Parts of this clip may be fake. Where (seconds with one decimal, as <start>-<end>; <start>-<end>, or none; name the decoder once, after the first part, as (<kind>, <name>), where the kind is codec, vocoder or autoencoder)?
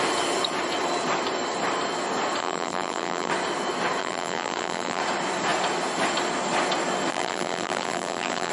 2.4-3.3 (vocoder, BigVGAN v2); 4.0-5.0; 7.1-8.5